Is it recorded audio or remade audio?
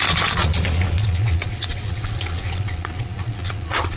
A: remade